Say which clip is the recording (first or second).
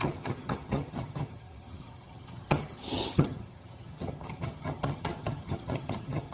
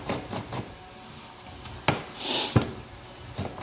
second